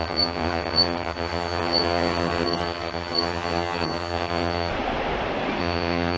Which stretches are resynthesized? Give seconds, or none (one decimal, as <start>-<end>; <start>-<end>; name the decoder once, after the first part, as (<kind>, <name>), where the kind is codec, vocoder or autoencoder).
0.0-4.7 (vocoder, HiFi-GAN); 5.6-6.2